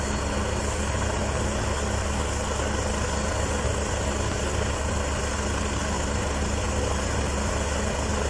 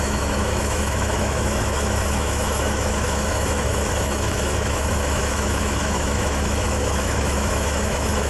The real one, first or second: first